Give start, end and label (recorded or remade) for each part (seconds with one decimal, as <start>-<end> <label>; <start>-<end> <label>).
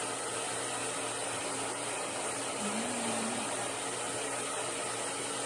0.0-1.2 recorded; 1.2-3.8 remade; 3.8-5.5 recorded